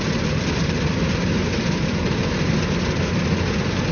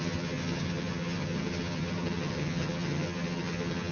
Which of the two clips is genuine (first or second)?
first